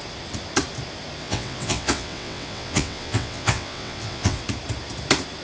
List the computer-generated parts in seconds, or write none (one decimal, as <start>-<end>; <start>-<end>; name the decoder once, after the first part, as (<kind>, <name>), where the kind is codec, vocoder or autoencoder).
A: 1.2-4.4 (vocoder, WaveNeXt)